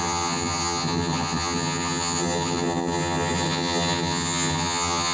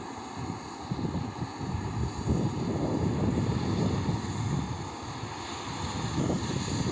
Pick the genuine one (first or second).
second